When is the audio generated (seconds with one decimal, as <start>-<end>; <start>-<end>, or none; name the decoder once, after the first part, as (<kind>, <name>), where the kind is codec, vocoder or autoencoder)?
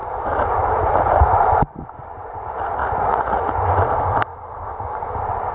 2.8-3.5 (vocoder, Vocos)